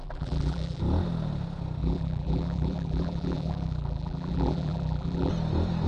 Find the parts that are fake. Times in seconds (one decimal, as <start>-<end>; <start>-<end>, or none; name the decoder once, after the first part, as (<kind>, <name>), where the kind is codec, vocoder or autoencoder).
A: 0.0-0.8 (vocoder, BigVGAN v2); 1.8-5.3